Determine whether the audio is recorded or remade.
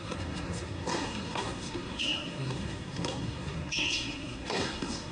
remade